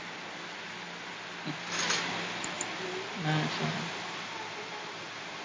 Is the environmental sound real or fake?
real